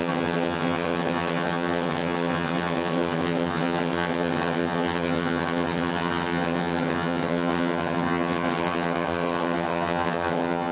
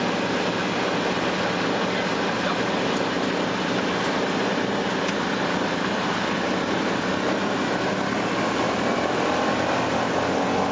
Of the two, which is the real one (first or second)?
second